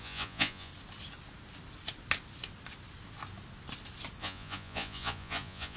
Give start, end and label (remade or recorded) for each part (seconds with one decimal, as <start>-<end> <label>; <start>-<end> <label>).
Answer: 0.0-0.7 remade; 0.7-4.2 recorded; 4.2-5.8 remade

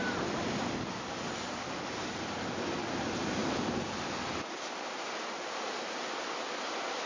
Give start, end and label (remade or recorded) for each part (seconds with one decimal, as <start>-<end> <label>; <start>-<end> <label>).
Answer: 0.0-7.1 recorded